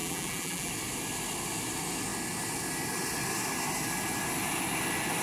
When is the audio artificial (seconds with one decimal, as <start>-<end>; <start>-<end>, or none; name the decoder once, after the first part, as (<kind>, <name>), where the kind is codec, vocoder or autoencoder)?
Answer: 0.0-0.7 (vocoder, BigVGAN v2)

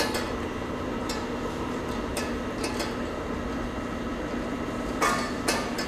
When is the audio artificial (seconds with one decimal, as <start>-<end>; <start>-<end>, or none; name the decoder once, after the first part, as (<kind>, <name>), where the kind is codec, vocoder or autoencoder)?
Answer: 0.0-2.1 (vocoder, BigVGAN v2)